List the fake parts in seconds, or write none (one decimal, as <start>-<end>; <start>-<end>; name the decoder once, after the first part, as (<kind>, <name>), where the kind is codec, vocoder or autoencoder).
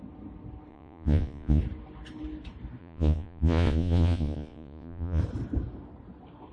0.7-1.6 (vocoder, Vocos); 2.8-5.2